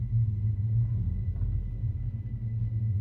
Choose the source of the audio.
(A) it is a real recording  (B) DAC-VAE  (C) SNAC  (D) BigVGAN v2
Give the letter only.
A